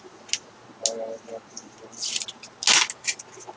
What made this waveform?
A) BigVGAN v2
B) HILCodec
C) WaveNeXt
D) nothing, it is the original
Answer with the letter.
D